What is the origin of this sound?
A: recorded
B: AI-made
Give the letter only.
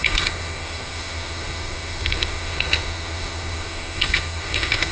B